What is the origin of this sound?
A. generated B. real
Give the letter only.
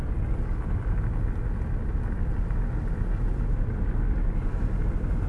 B